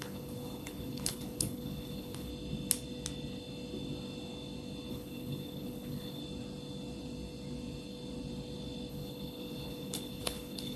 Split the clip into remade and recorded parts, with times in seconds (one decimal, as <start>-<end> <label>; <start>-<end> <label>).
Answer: 0.0-2.3 remade; 2.3-4.9 recorded; 4.9-6.2 remade; 6.2-8.9 recorded; 8.9-10.8 remade